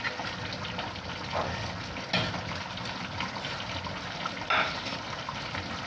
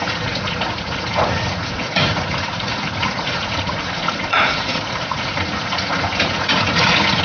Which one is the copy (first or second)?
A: second